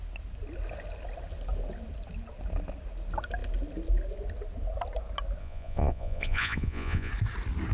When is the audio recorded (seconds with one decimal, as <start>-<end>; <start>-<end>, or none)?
0.0-5.4; 7.1-7.7